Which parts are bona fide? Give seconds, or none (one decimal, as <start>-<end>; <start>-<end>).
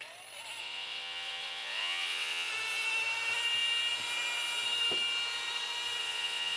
0.0-0.6; 2.5-6.0